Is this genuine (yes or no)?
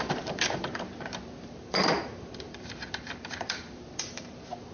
no